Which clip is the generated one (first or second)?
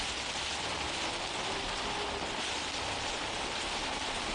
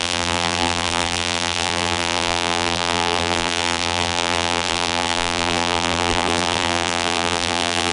second